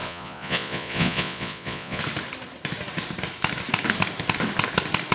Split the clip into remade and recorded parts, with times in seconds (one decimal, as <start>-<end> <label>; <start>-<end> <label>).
0.0-2.0 remade; 2.0-5.1 recorded